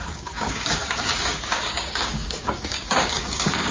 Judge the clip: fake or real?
fake